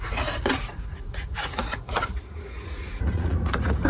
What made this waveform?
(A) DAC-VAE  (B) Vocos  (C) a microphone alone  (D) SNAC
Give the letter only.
B